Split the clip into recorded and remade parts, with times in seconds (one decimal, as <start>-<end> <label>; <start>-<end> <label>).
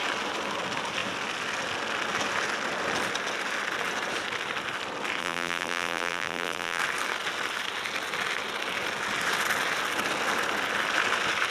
0.0-5.2 recorded; 5.2-6.8 remade; 6.8-11.5 recorded